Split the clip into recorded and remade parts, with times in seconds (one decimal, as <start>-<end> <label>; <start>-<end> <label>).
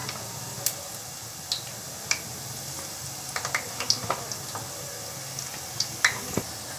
0.0-6.8 recorded